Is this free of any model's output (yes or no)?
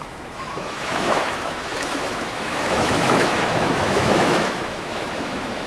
no